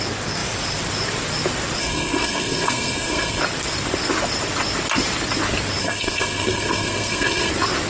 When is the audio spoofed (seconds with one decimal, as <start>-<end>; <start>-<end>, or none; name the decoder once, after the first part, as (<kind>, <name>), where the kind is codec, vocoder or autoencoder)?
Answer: 1.8-3.4 (codec, SNAC); 5.8-7.5